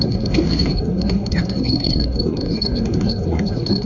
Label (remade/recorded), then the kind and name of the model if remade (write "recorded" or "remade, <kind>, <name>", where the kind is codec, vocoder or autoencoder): remade, codec, SNAC